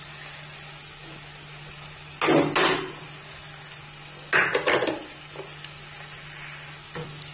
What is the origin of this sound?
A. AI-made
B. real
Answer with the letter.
B